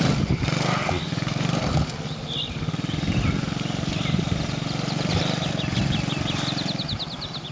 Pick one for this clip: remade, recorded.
recorded